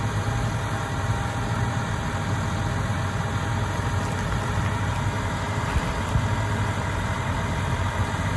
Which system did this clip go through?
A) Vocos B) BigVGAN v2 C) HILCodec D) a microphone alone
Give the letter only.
D